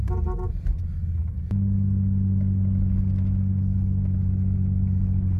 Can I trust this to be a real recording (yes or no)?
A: yes